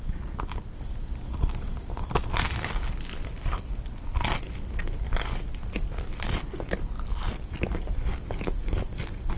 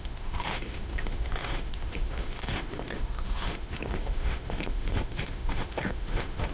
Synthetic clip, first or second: second